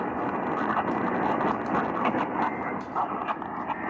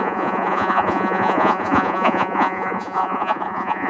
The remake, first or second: second